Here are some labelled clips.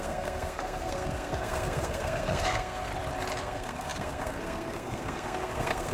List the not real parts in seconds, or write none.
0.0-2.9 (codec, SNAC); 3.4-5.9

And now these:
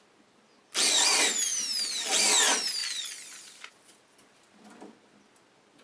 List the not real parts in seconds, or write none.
2.8-3.7 (vocoder, BigVGAN v2)

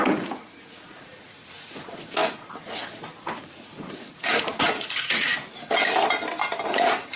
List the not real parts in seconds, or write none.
0.0-5.3 (vocoder, Vocos); 6.7-7.2

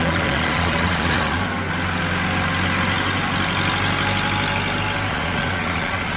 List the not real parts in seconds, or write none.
0.0-1.4 (vocoder, Vocos); 5.1-6.2